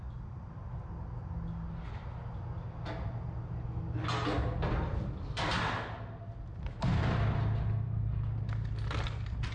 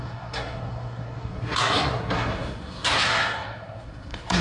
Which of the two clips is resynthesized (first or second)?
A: second